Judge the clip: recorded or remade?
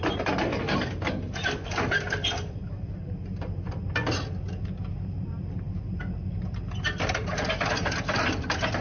recorded